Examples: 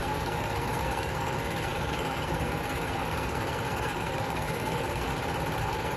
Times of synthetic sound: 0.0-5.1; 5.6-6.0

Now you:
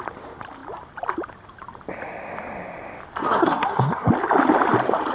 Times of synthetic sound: 3.2-4.1

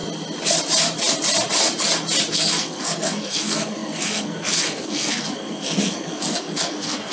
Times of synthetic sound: 2.3-7.1

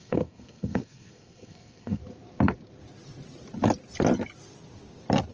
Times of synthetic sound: 0.0-2.0

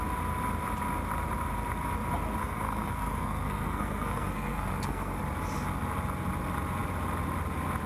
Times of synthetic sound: 2.4-5.2